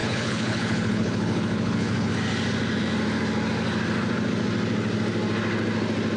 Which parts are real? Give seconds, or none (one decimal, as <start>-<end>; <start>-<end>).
2.1-6.2